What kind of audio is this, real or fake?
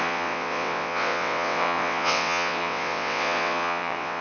fake